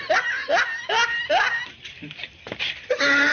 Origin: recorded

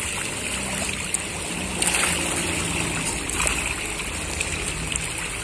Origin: recorded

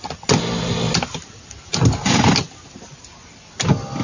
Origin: recorded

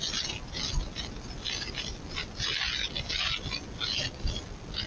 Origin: recorded